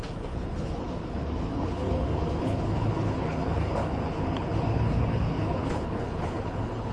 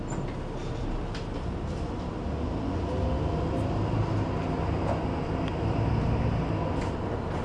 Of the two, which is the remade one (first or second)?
first